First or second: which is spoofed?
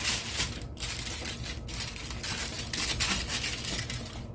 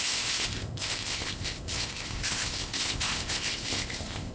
second